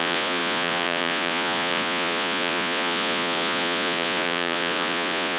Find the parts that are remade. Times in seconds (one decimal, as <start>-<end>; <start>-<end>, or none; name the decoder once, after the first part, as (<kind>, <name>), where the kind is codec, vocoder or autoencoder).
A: 0.0-5.4 (vocoder, Vocos)